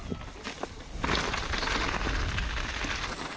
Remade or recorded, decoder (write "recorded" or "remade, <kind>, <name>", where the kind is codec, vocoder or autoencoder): recorded